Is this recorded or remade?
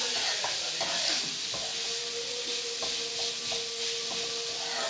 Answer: recorded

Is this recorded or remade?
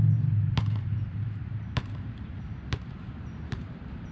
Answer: remade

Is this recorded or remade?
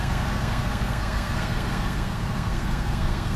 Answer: remade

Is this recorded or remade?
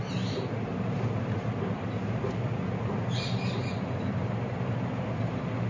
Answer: recorded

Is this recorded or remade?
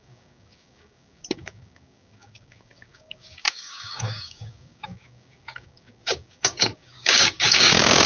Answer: remade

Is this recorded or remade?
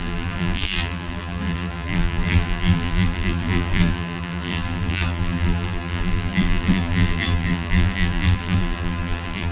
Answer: remade